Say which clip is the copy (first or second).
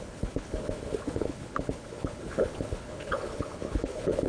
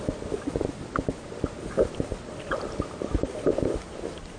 first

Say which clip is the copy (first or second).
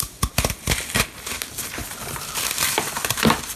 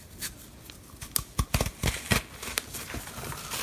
first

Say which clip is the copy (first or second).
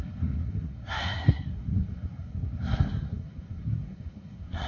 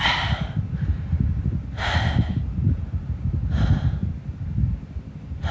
first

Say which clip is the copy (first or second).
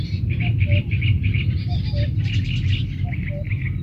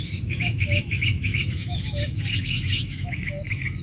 second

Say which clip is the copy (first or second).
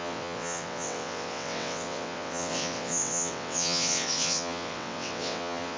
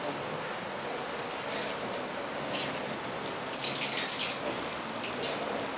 first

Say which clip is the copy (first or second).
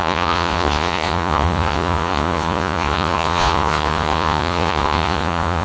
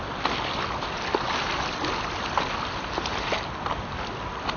first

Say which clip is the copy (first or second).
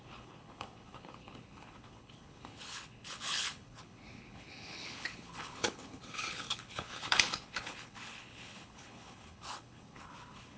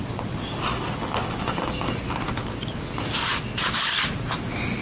first